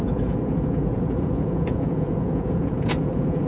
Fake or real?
fake